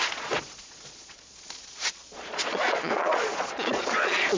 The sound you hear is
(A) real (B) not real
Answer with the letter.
B